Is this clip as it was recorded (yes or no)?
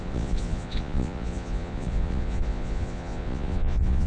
no